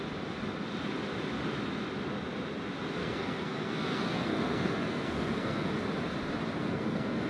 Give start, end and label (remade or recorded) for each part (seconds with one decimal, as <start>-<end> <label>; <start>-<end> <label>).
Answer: 0.0-3.0 recorded; 3.0-5.7 remade; 5.7-6.6 recorded; 6.6-7.3 remade